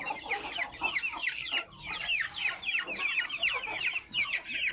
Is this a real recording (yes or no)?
no